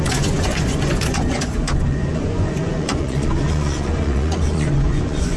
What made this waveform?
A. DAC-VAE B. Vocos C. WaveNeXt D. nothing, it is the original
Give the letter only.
B